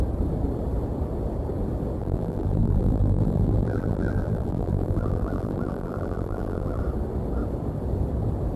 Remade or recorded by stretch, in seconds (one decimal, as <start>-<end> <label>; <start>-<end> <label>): 0.0-2.0 recorded; 2.0-6.8 remade; 6.8-8.6 recorded